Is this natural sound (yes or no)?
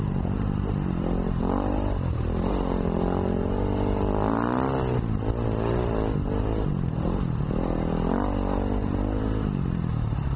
yes